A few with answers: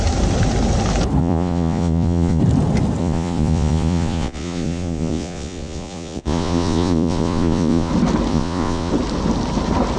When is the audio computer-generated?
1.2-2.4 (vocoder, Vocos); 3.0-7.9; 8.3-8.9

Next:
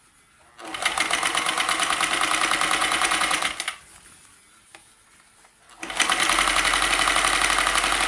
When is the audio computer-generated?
2.8-3.5 (vocoder, Vocos)